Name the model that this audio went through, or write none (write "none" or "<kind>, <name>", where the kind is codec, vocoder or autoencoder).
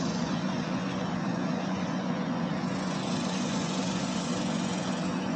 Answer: vocoder, Vocos